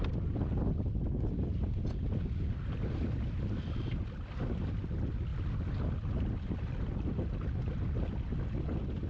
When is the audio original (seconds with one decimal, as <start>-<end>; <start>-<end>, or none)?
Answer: 0.0-9.1